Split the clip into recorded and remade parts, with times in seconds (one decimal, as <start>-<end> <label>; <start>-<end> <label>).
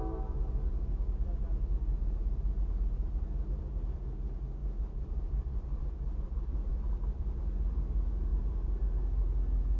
0.0-4.6 recorded; 4.6-5.8 remade; 5.8-6.7 recorded; 6.7-7.7 remade; 7.7-8.3 recorded; 8.3-8.8 remade; 8.8-9.8 recorded